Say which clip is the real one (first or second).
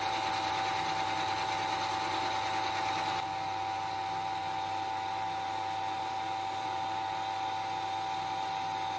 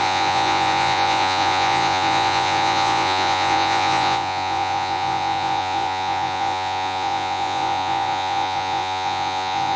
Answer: first